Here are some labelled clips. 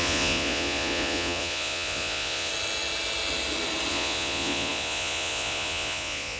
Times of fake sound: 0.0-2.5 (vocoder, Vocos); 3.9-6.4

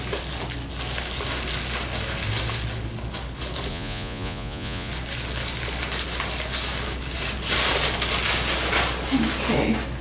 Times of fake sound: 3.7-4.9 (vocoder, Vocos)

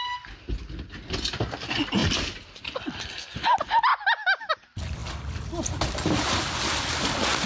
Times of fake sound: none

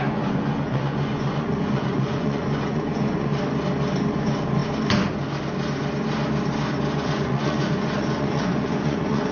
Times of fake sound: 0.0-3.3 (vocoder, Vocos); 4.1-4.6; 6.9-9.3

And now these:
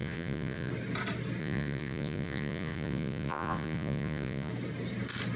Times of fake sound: 0.0-0.7 (vocoder, Vocos); 1.4-4.5

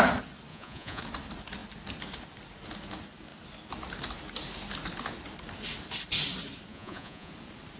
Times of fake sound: 0.5-1.0 (vocoder, Vocos); 6.7-7.3